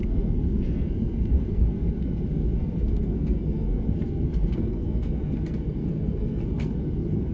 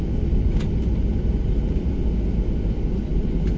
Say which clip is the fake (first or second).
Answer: first